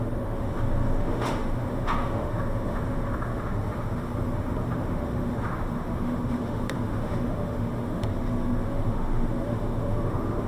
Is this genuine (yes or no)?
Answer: no